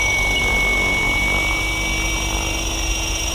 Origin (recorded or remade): recorded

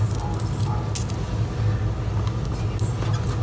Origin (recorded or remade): recorded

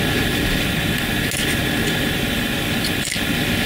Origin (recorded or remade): recorded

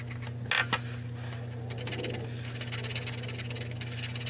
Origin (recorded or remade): recorded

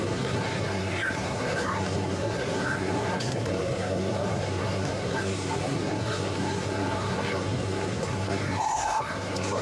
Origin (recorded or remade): remade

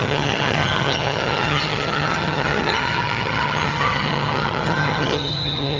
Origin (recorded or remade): remade